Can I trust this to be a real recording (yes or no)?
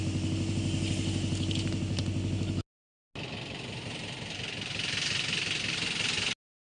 yes